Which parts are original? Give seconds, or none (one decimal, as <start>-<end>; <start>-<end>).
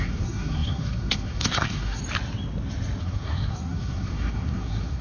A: 2.0-3.0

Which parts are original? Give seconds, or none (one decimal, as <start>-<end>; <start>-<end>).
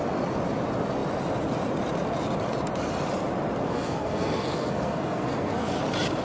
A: 0.0-3.7; 5.8-6.2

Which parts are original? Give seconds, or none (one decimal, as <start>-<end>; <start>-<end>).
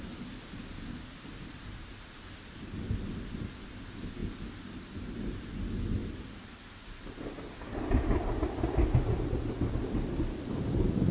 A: 0.0-11.1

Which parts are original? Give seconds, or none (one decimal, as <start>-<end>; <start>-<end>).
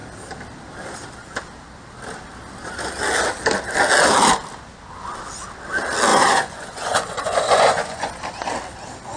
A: 0.0-6.1; 8.1-9.2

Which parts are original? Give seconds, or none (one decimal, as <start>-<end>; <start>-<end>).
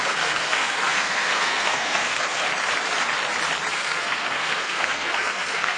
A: 2.5-3.7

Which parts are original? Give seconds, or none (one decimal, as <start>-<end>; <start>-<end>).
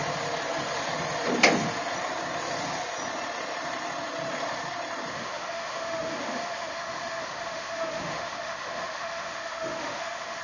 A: 0.0-5.1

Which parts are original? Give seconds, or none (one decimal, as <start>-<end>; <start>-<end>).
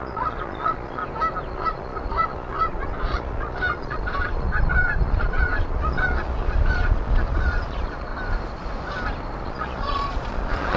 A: 1.0-1.5; 8.1-9.4